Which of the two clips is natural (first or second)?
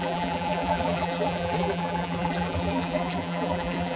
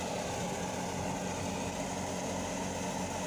second